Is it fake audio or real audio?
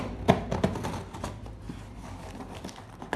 real